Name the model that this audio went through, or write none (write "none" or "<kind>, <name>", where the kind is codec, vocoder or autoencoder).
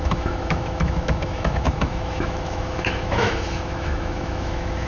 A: autoencoder, DAC-VAE